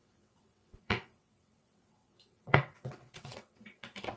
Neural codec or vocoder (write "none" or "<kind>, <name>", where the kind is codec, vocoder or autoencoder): vocoder, WaveNeXt